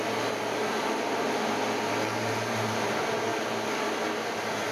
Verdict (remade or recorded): recorded